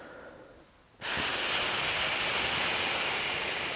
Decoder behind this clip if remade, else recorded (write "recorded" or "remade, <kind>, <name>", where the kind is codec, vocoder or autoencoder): recorded